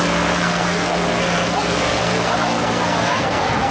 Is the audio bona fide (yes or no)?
no